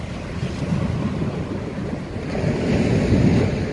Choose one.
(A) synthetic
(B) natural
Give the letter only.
B